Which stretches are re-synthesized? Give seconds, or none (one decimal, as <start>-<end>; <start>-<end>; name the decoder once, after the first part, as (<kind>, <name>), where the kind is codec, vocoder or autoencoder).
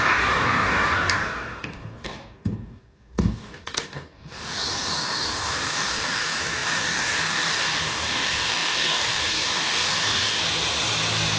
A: 0.0-10.4 (codec, DAC)